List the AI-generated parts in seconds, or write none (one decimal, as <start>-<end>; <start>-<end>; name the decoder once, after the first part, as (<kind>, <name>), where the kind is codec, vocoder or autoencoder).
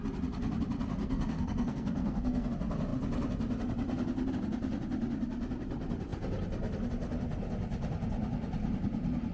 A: 1.0-2.5 (codec, SNAC)